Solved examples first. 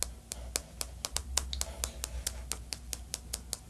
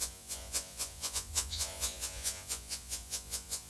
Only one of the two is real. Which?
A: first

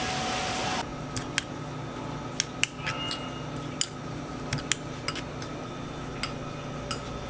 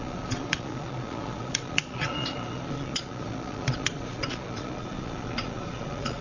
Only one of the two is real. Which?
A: first